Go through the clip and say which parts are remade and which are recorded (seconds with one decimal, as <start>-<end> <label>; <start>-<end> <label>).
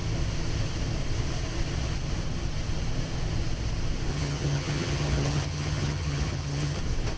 0.0-4.1 recorded; 4.1-6.8 remade; 6.8-7.2 recorded